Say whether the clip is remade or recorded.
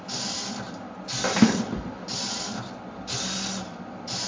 remade